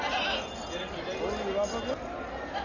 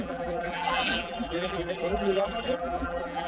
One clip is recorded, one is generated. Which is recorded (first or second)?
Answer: first